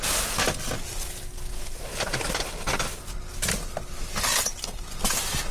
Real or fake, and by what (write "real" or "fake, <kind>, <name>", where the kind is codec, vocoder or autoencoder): real